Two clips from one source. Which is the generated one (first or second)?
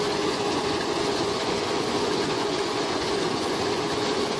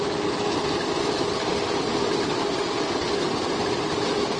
first